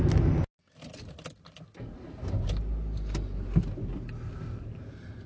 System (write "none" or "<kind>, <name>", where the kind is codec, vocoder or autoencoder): none